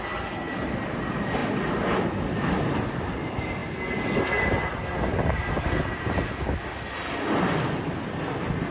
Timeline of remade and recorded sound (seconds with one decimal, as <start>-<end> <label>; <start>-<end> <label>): 0.0-8.7 recorded